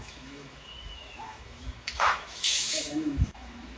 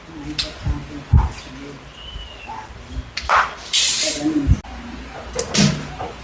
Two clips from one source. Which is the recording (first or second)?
second